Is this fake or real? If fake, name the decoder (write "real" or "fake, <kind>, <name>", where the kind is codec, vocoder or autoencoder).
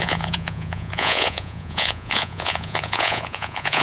fake, vocoder, Vocos